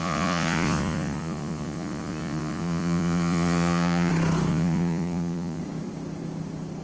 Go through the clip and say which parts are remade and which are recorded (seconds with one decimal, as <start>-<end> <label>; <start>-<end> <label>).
0.0-4.1 remade; 4.1-4.5 recorded; 4.5-5.6 remade; 5.6-6.8 recorded